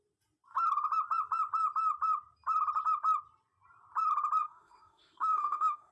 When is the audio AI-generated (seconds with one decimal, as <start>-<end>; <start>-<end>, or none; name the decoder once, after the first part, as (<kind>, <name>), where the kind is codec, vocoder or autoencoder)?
4.4-5.9 (autoencoder, DAC-VAE)